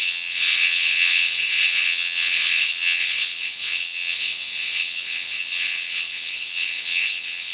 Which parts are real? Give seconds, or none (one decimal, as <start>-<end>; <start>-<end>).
none